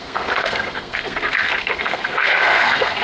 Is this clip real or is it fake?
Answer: fake